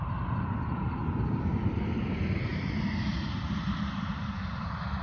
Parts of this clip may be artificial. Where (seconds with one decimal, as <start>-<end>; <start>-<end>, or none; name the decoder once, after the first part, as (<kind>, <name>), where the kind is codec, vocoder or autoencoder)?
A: 0.0-1.0 (vocoder, BigVGAN v2); 1.7-5.0